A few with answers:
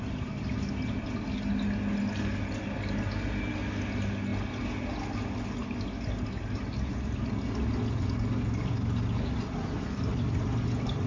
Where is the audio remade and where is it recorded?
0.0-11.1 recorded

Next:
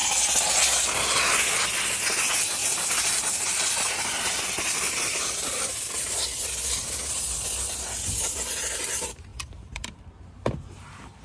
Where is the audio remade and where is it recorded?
0.0-2.6 recorded; 2.6-5.6 remade; 5.6-9.3 recorded; 9.3-10.0 remade; 10.0-11.2 recorded